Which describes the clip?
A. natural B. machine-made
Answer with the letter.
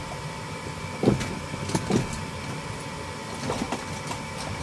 A